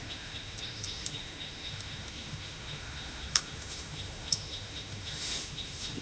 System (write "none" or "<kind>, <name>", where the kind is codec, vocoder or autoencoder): autoencoder, DAC-VAE